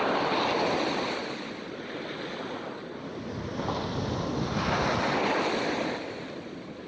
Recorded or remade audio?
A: recorded